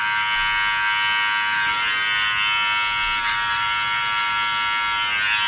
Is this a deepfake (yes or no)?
no